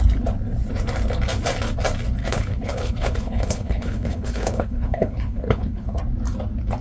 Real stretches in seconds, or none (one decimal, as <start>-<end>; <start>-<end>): 0.0-2.2; 6.0-6.8